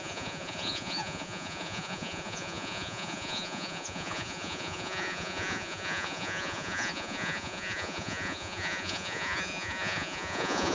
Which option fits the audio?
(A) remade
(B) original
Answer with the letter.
A